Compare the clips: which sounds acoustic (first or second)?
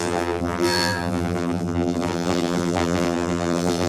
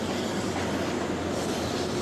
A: second